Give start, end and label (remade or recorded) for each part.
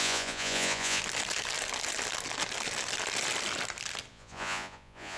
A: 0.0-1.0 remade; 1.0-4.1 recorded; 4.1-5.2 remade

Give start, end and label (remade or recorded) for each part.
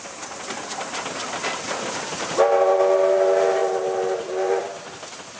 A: 0.0-5.4 recorded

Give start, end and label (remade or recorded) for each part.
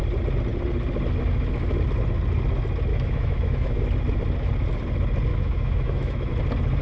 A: 0.0-2.9 recorded; 2.9-3.8 remade; 3.8-5.3 recorded; 5.3-6.3 remade; 6.3-6.8 recorded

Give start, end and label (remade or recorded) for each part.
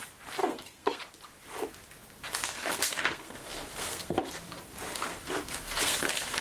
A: 0.0-0.4 recorded; 0.4-1.0 remade; 1.0-2.4 recorded; 2.4-4.3 remade; 4.3-4.9 recorded; 4.9-6.4 remade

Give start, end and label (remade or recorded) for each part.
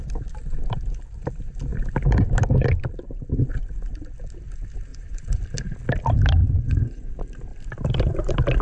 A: 0.0-4.9 recorded; 4.9-5.4 remade; 5.4-6.4 recorded; 6.4-7.1 remade; 7.1-8.6 recorded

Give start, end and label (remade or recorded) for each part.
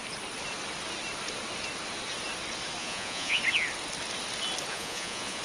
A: 0.0-2.8 recorded; 2.8-3.4 remade; 3.4-4.7 recorded; 4.7-5.4 remade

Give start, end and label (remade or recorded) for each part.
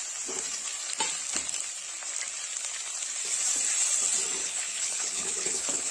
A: 0.0-4.4 recorded; 4.4-5.9 remade